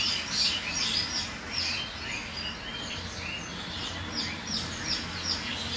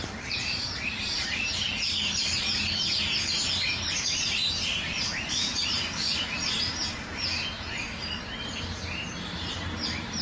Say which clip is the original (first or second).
first